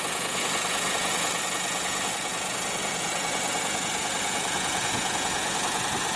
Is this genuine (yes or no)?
no